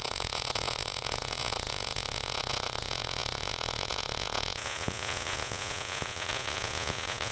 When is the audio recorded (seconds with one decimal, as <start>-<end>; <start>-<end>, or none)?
none